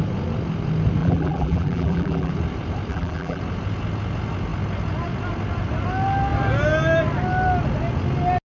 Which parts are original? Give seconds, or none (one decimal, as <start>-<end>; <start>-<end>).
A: 0.0-1.0; 2.3-2.9; 3.4-8.6